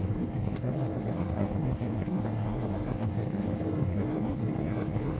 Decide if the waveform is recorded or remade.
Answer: remade